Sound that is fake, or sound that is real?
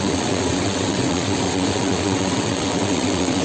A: fake